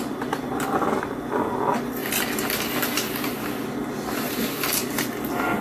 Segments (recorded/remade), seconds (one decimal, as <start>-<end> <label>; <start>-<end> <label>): 0.0-5.6 recorded